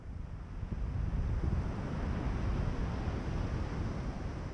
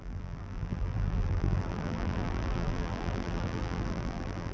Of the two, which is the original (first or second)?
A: first